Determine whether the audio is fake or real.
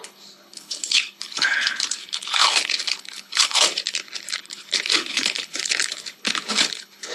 fake